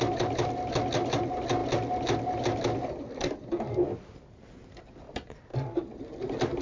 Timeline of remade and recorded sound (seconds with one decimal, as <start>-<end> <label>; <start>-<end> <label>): 0.0-6.6 recorded